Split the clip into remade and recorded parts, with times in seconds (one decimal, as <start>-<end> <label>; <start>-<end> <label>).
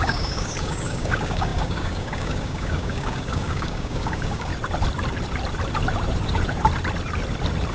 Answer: 0.0-4.5 remade; 4.5-7.7 recorded